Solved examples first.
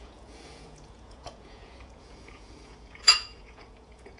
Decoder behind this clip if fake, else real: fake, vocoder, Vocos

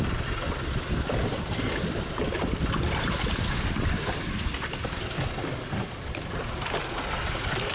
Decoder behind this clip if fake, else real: real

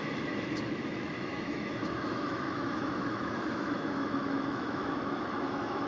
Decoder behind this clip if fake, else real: fake, autoencoder, DAC-VAE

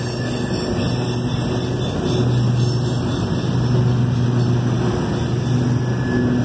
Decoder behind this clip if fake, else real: real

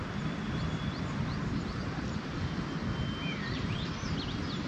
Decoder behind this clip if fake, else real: real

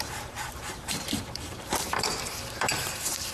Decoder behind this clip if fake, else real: fake, vocoder, BigVGAN v2